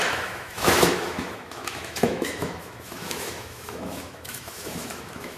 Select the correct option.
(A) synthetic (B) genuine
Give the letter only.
A